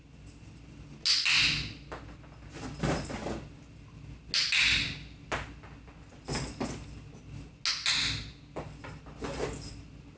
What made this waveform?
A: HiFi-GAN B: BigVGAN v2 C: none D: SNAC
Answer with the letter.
C